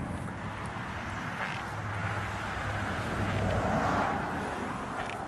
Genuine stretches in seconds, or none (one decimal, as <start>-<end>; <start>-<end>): 0.0-5.3

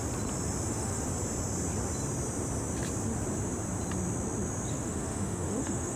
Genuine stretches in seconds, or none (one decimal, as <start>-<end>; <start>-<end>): 0.0-0.7; 1.1-4.7

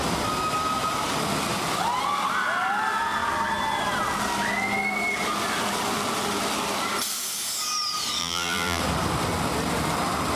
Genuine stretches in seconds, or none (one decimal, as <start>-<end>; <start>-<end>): 0.0-8.2; 8.8-10.4

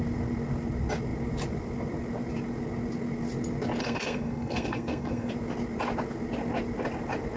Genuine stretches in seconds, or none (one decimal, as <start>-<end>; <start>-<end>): 0.0-3.8; 5.3-7.4

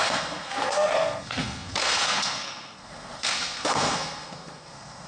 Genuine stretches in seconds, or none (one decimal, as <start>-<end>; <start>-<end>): none

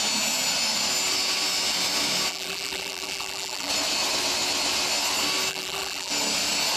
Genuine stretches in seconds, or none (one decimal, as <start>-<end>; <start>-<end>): 0.0-2.3; 3.7-5.5; 6.1-6.8

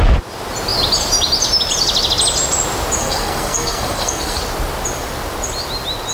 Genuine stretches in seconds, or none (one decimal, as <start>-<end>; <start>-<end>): 0.0-3.0; 4.4-6.1